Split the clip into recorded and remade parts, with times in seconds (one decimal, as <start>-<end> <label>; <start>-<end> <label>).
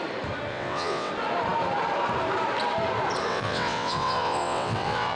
0.0-0.5 recorded; 0.5-1.1 remade; 1.1-3.3 recorded; 3.3-5.2 remade